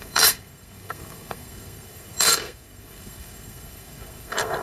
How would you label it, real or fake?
fake